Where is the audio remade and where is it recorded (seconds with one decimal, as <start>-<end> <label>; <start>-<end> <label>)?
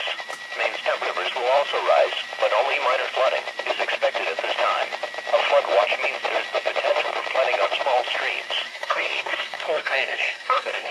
0.0-8.7 recorded; 8.7-10.9 remade